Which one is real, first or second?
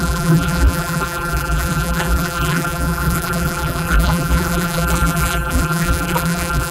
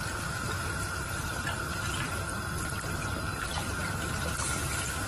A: second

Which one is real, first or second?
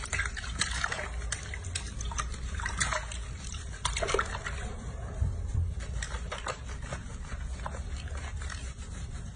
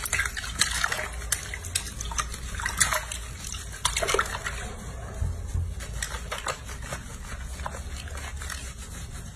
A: second